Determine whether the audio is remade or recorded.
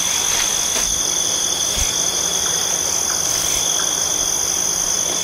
remade